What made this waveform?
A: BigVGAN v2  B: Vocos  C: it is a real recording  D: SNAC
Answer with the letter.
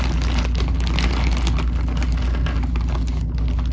C